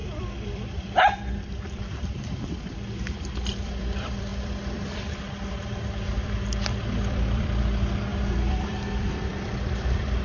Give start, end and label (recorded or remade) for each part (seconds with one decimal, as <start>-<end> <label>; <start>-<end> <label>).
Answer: 0.0-10.2 remade